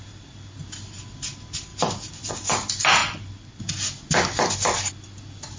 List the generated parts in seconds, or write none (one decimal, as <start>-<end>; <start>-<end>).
1.7-2.3